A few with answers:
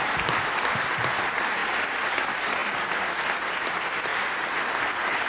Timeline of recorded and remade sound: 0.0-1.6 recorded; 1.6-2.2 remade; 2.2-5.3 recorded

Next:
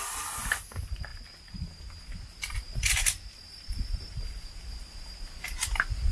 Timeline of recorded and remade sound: 0.0-6.1 recorded

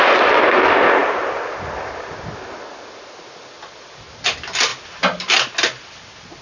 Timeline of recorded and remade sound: 0.0-6.4 recorded

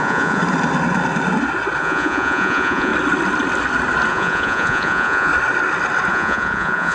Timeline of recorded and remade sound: 0.0-0.4 remade; 0.4-1.8 recorded; 1.8-2.9 remade; 2.9-4.1 recorded; 4.1-5.3 remade; 5.3-6.1 recorded; 6.1-6.9 remade

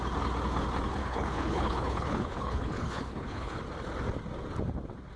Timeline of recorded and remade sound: 0.0-1.0 recorded; 1.0-3.6 remade; 3.6-5.2 recorded